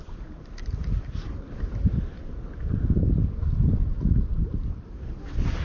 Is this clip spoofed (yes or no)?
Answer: no